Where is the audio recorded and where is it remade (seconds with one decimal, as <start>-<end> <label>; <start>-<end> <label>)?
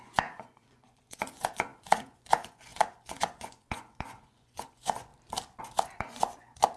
0.0-5.1 remade; 5.1-5.6 recorded; 5.6-6.8 remade